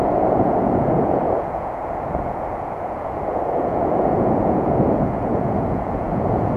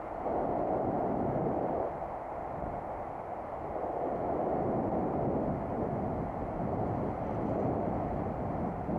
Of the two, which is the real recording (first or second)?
second